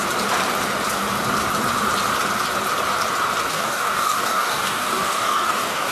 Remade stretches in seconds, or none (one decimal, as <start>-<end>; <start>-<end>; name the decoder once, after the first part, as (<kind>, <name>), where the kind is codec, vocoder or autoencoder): 3.5-5.9 (codec, DAC)

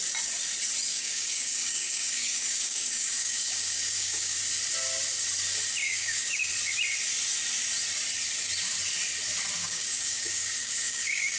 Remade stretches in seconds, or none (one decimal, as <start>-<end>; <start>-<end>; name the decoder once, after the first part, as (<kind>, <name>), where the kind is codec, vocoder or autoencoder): 0.9-4.4 (codec, DAC); 5.8-6.5; 9.6-11.4

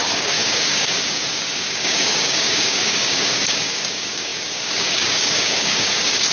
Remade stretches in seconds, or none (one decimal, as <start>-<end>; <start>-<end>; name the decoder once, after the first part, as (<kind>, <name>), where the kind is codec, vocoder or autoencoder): 0.0-6.3 (codec, DAC)

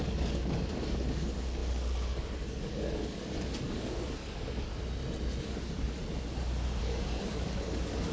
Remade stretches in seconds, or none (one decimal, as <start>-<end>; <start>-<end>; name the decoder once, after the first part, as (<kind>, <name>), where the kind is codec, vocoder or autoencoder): 0.0-4.7 (codec, DAC); 5.4-6.0; 6.8-8.1

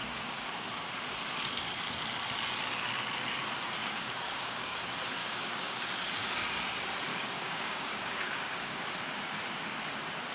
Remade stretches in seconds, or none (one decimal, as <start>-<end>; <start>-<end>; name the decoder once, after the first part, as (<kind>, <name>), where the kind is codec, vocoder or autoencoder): 0.0-0.7 (codec, DAC); 3.8-4.8; 5.2-5.7; 7.1-8.9

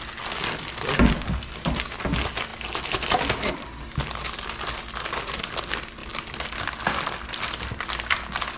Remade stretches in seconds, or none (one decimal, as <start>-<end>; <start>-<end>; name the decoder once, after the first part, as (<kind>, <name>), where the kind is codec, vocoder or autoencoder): none

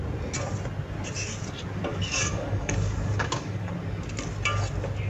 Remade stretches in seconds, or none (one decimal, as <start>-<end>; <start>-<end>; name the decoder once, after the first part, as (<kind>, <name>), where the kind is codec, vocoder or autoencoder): 1.9-3.7 (codec, DAC)

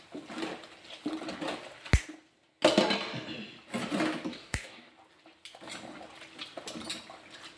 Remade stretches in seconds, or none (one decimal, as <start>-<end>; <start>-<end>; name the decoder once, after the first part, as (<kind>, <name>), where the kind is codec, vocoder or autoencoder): 4.3-4.9 (codec, DAC)